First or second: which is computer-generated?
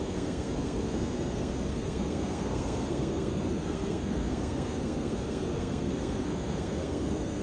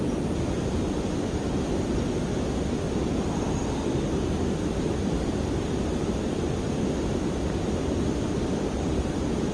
first